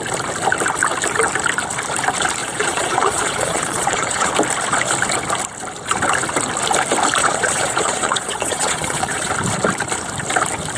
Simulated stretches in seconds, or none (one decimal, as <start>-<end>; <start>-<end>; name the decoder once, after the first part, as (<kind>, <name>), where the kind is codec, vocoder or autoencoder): 2.4-4.3 (vocoder, Vocos); 7.2-9.3